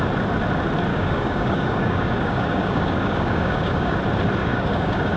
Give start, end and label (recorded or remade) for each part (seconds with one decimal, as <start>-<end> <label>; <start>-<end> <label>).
0.0-0.9 recorded; 0.9-4.0 remade; 4.0-4.4 recorded; 4.4-5.2 remade